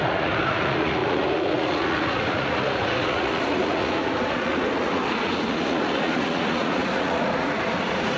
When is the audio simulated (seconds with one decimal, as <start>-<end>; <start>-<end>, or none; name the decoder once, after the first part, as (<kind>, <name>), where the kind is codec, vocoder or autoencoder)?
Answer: 0.0-8.2 (vocoder, Vocos)